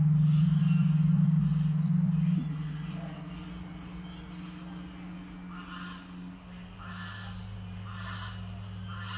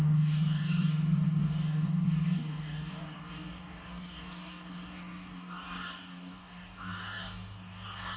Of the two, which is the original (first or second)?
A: first